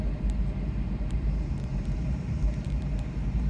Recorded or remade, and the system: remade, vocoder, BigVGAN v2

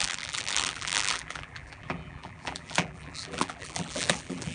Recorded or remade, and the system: remade, vocoder, BigVGAN v2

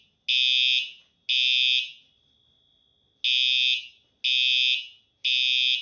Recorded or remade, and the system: recorded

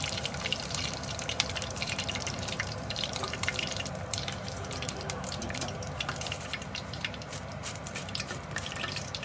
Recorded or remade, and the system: remade, vocoder, BigVGAN v2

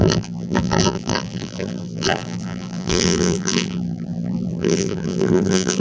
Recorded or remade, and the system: remade, vocoder, BigVGAN v2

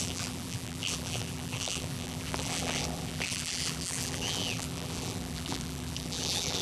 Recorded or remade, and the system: remade, vocoder, BigVGAN v2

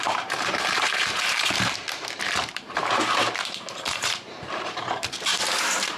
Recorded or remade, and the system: remade, vocoder, BigVGAN v2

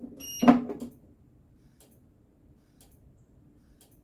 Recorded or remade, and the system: recorded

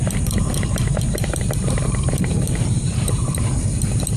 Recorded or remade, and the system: remade, vocoder, BigVGAN v2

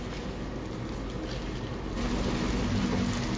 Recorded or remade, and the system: recorded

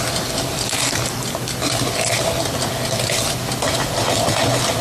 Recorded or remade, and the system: recorded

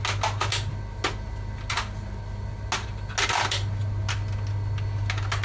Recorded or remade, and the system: recorded